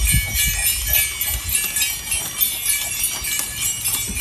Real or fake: real